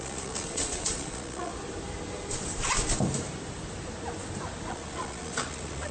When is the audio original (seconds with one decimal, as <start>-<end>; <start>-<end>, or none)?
1.5-4.7